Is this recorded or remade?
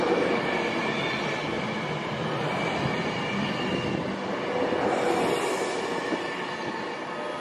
recorded